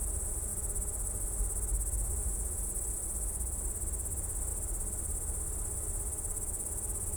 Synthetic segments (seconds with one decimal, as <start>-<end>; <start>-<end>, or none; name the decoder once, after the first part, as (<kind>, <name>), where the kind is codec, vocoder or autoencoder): none